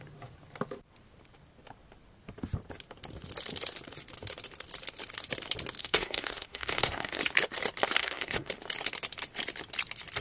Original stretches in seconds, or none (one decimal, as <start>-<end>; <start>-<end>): 0.0-5.8; 7.2-8.0; 8.5-10.2